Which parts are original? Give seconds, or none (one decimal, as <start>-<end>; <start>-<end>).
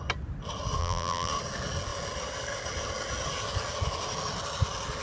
0.0-0.8; 1.3-5.0